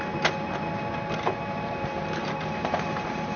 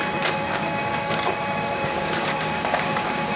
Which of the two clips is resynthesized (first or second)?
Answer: second